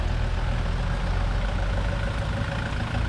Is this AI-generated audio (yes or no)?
no